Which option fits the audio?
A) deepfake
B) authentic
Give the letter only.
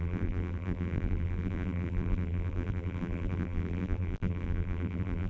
A